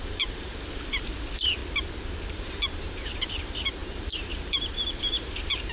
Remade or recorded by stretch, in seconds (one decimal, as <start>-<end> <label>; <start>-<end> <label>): 0.0-0.5 remade; 0.5-1.0 recorded; 1.0-1.6 remade; 1.6-2.3 recorded; 2.3-5.7 remade